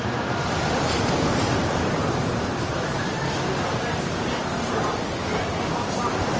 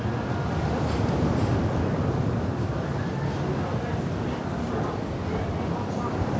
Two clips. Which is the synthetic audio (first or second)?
first